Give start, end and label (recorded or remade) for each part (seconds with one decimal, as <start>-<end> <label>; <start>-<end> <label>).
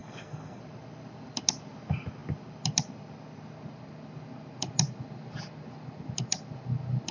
0.0-0.6 remade; 0.6-7.1 recorded